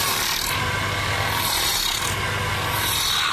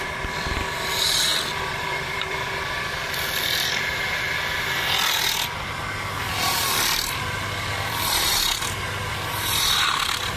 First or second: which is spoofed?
second